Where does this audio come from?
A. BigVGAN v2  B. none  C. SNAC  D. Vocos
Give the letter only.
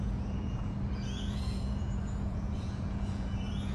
D